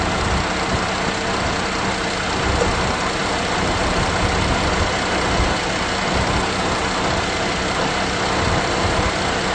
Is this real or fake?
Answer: real